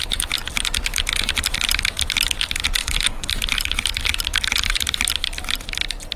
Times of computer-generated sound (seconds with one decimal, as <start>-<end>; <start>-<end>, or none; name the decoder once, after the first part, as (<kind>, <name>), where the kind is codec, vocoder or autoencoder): 2.8-3.3 (codec, DAC)